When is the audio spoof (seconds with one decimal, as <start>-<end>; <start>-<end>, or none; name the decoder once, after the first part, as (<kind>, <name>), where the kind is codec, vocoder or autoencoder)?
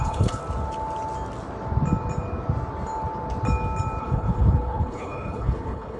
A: 0.0-0.4 (codec, HILCodec); 4.0-6.0